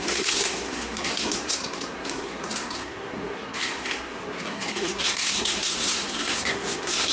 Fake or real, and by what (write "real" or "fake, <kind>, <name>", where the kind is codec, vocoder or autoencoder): fake, codec, SNAC